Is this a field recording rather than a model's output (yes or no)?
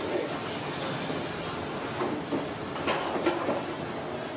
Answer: yes